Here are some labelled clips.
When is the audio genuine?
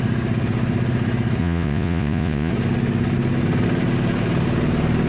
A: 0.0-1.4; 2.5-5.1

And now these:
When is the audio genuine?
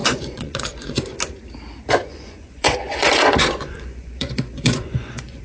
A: 1.0-2.0